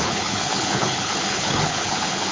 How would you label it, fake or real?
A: fake